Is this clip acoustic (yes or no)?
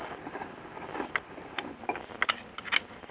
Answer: yes